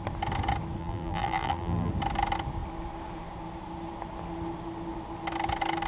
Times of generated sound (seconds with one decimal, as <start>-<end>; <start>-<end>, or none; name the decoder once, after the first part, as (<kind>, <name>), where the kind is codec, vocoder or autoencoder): 0.8-1.9 (vocoder, BigVGAN v2)